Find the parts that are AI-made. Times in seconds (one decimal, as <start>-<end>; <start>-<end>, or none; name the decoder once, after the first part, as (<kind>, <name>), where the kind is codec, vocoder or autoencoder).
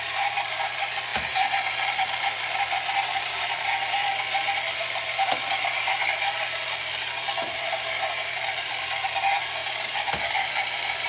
0.0-11.1 (vocoder, BigVGAN v2)